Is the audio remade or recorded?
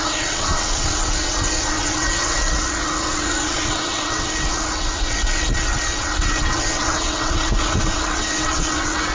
remade